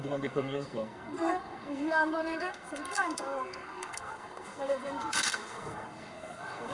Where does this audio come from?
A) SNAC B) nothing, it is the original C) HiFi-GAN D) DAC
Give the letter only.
A